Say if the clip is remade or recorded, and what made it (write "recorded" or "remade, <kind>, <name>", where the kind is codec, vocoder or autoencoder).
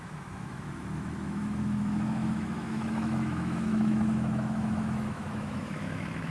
remade, autoencoder, DAC-VAE